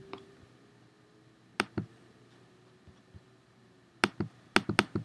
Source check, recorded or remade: recorded